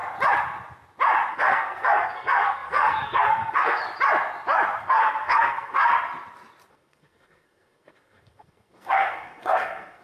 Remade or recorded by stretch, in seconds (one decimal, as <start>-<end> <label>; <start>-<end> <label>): 0.0-1.3 recorded; 1.3-3.8 remade; 3.8-4.8 recorded; 4.8-5.9 remade; 5.9-6.7 recorded; 6.7-10.0 remade